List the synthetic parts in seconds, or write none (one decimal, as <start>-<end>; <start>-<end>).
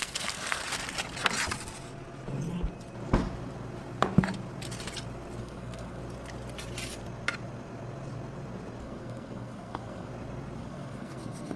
0.0-0.6; 5.4-6.0; 8.8-10.1; 10.6-11.6